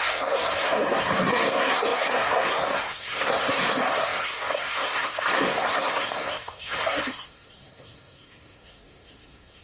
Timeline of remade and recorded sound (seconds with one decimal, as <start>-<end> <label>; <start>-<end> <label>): 0.0-9.6 remade